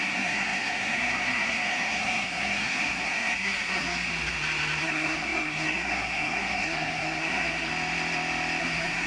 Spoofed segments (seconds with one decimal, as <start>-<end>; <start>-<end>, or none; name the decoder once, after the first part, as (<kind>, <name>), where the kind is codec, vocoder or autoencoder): 0.0-4.1 (codec, SNAC); 4.8-7.7; 8.6-9.1